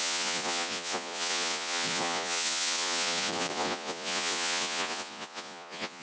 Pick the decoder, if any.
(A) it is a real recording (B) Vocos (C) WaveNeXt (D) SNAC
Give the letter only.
B